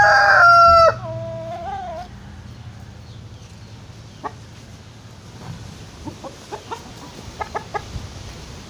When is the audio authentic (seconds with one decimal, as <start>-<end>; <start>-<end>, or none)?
0.0-7.7; 8.2-8.7